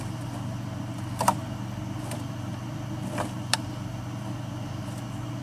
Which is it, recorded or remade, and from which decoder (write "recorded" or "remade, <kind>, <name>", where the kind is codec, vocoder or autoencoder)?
recorded